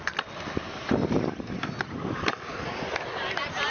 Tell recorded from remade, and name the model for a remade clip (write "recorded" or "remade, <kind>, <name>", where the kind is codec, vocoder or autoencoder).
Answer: recorded